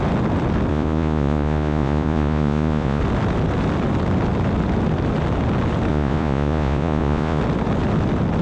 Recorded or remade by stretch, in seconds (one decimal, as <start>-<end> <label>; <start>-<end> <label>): 0.0-0.7 recorded; 0.7-3.0 remade; 3.0-5.9 recorded; 5.9-7.4 remade; 7.4-8.4 recorded

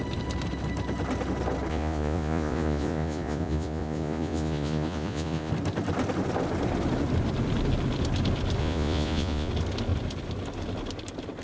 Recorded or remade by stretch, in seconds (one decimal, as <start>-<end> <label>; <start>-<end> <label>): 0.0-1.7 recorded; 1.7-5.5 remade; 5.5-8.6 recorded; 8.6-9.5 remade; 9.5-11.4 recorded

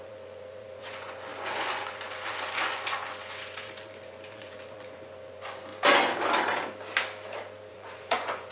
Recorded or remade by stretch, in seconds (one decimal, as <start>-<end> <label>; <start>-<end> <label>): 0.0-5.7 remade; 5.7-7.7 recorded; 7.7-8.5 remade